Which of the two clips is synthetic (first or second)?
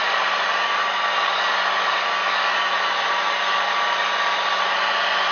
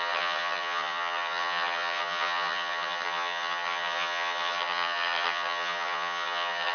second